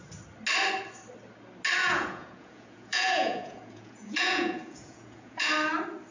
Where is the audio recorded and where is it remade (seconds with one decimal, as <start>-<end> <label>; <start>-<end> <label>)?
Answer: 0.0-1.8 recorded; 1.8-5.5 remade; 5.5-6.1 recorded